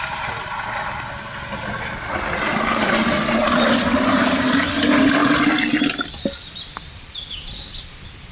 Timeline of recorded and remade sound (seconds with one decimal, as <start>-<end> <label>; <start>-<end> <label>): 0.0-8.3 recorded